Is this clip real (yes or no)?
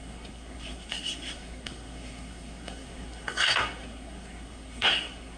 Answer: no